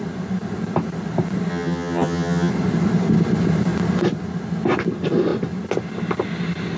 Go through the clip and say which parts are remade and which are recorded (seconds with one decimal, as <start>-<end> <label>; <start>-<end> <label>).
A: 0.0-1.5 recorded; 1.5-2.5 remade; 2.5-6.8 recorded